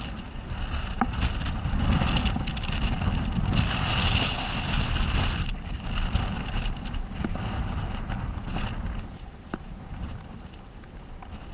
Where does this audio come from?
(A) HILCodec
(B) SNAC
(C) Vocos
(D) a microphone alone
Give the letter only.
D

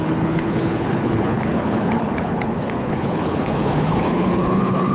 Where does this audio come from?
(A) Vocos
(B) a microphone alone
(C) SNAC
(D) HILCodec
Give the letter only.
D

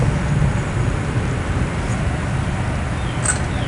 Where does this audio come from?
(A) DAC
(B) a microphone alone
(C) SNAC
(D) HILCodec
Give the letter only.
B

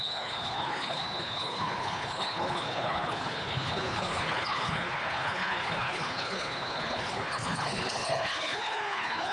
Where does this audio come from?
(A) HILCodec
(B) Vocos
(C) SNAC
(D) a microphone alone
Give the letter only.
A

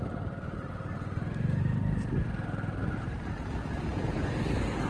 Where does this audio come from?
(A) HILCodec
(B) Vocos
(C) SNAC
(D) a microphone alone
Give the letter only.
D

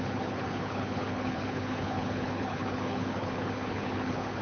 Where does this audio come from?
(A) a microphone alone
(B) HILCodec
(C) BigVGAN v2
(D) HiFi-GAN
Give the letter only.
B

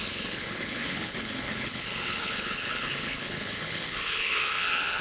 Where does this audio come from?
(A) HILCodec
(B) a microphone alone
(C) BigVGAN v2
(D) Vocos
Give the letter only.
A